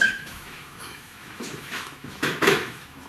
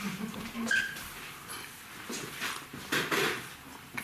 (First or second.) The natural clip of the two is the second